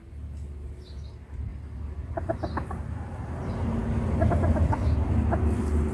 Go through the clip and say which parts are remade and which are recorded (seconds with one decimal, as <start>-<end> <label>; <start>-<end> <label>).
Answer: 0.0-5.9 recorded